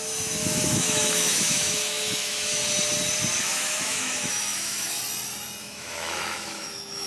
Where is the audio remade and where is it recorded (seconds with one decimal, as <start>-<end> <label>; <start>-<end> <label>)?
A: 0.0-2.6 remade; 2.6-3.4 recorded; 3.4-5.0 remade; 5.0-5.6 recorded; 5.6-7.1 remade